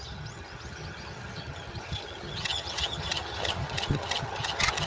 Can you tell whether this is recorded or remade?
remade